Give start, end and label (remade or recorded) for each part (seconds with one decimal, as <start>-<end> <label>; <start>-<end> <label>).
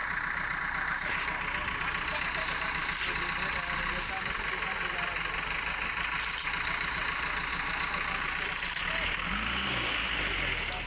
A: 0.0-0.6 remade; 0.6-7.5 recorded; 7.5-9.3 remade; 9.3-10.9 recorded